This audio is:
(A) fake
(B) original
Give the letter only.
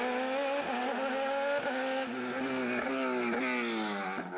B